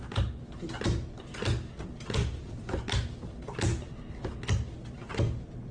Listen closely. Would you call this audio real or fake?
real